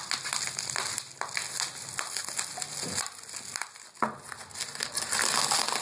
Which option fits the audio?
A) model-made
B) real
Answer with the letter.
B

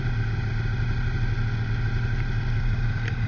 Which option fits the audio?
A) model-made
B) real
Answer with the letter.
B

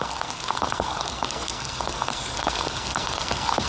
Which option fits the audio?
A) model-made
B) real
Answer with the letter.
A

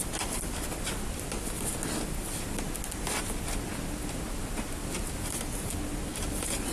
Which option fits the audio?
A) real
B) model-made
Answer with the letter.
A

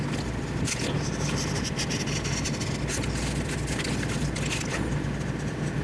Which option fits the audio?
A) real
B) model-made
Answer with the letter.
A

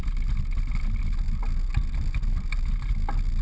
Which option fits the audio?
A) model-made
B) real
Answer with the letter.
B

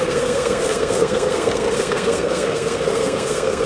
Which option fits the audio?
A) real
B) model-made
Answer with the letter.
B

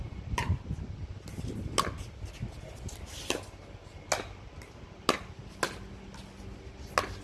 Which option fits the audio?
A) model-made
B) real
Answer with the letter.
B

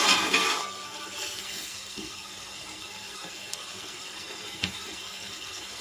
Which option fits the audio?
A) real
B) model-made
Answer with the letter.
B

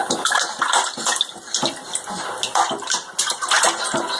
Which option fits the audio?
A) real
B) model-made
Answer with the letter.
A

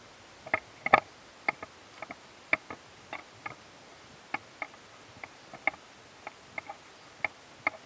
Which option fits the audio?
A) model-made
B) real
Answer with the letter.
B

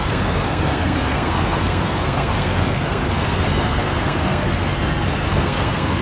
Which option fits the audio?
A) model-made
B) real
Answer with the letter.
A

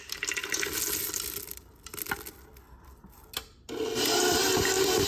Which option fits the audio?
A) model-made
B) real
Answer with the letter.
B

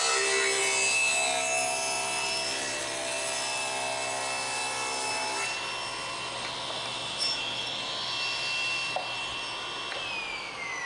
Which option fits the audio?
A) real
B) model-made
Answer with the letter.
A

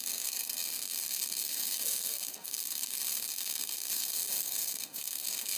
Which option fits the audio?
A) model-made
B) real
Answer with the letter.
A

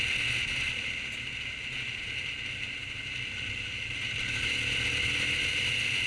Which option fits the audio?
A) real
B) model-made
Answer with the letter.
A